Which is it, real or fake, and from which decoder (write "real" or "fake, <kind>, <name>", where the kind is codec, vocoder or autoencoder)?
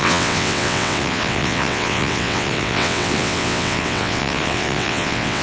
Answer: fake, vocoder, WaveNeXt